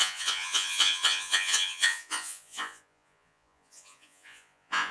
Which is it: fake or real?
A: fake